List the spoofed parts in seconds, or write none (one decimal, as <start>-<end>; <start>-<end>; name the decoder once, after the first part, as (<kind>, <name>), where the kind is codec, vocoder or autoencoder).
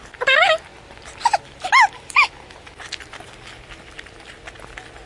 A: none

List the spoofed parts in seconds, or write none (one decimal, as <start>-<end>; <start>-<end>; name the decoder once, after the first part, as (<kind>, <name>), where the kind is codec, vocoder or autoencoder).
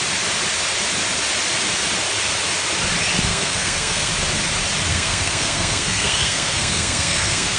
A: 3.3-4.1 (codec, SNAC); 4.9-7.6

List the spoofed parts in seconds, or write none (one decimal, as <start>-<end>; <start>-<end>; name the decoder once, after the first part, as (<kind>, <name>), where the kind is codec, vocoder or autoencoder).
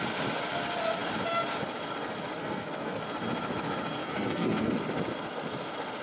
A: 2.4-3.0 (codec, SNAC); 4.0-4.7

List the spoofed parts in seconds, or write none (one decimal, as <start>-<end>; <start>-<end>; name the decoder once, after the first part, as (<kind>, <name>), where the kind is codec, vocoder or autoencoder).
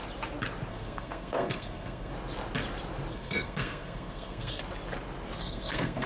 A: 0.7-2.1 (codec, SNAC); 3.1-4.6; 5.4-6.1